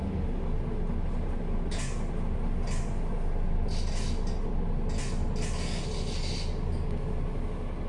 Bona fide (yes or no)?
yes